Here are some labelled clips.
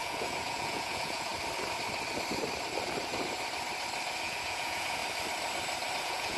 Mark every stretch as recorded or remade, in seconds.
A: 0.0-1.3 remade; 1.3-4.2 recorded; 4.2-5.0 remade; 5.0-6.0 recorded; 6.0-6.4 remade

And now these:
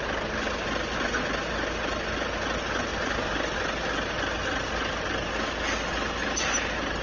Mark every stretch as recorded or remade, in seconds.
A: 0.0-7.0 recorded

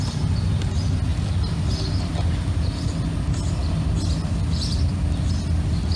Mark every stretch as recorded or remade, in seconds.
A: 0.0-6.0 recorded

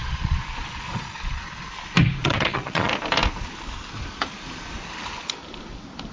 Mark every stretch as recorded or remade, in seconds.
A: 0.0-1.7 remade; 1.7-2.2 recorded; 2.2-2.9 remade; 2.9-6.1 recorded